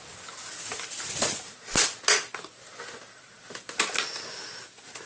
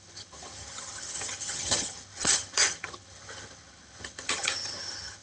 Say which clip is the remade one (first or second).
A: second